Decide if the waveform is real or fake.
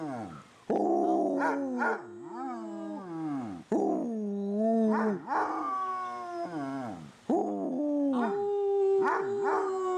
real